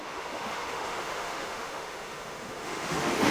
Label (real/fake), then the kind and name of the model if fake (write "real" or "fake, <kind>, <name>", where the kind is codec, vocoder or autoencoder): fake, autoencoder, DAC-VAE